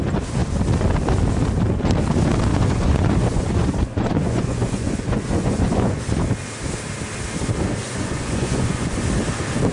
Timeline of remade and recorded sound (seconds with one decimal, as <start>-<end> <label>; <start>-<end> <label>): 0.0-2.5 recorded; 2.5-6.0 remade; 6.0-7.8 recorded; 7.8-9.0 remade; 9.0-9.7 recorded